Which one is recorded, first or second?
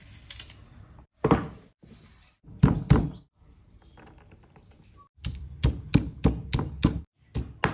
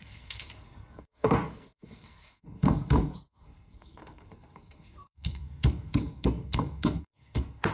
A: first